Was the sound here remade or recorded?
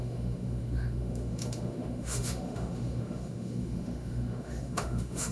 remade